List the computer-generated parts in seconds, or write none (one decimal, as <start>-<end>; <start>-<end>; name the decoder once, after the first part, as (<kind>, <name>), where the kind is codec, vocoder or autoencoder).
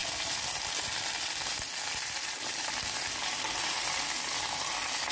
none